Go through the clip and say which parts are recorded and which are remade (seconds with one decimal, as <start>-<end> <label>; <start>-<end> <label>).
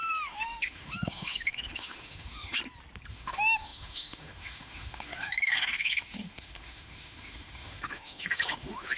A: 0.0-2.6 remade; 2.6-3.1 recorded; 3.1-9.0 remade